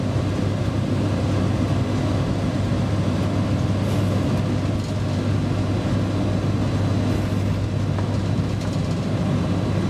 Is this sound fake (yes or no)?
no